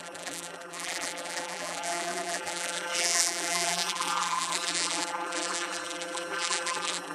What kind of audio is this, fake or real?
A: fake